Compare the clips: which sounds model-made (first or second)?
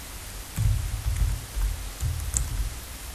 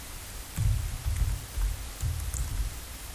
second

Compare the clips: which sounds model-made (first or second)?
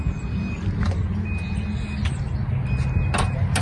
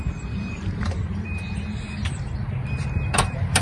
second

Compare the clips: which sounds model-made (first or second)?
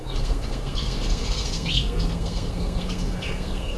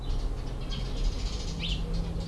first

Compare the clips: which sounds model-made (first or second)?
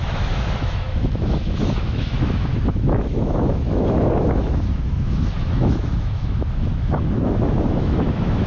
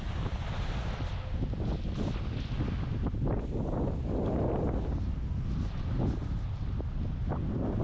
first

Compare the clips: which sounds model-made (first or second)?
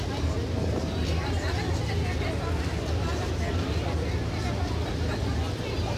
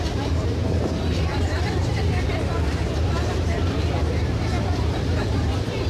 second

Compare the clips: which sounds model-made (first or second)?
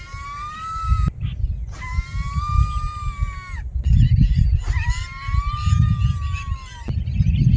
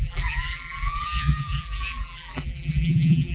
second